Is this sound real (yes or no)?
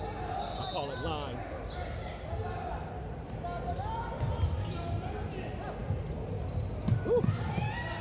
yes